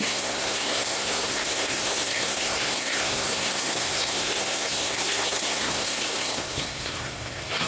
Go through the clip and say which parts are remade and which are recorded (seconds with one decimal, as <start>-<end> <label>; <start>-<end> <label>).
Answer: 0.0-7.7 remade